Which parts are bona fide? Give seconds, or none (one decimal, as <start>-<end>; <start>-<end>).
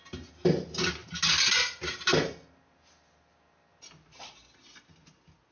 0.0-5.5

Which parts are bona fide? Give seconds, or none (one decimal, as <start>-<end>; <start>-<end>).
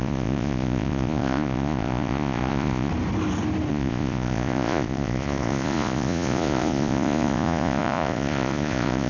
2.9-3.7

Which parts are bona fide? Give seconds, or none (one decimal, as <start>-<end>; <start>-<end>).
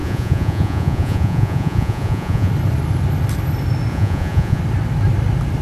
2.5-3.9; 4.6-5.6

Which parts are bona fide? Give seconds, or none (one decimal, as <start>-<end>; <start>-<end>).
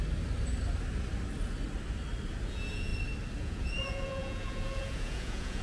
0.0-2.5; 2.9-3.4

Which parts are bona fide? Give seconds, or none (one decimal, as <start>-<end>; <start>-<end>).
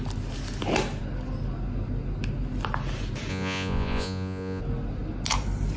0.0-3.3; 4.6-5.8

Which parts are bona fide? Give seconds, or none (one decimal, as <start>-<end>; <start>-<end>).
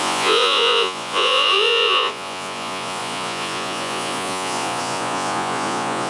none